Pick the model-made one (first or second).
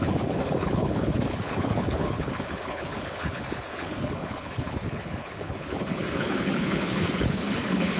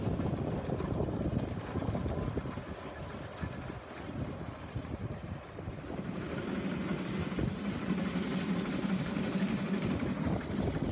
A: first